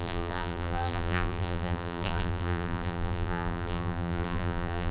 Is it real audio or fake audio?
fake